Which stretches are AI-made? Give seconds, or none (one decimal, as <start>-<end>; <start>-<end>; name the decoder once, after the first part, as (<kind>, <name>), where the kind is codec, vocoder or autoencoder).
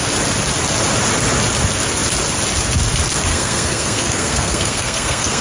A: 3.3-5.4 (codec, SNAC)